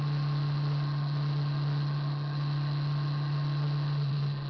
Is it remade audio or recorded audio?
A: recorded